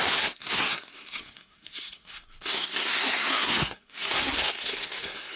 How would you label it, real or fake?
fake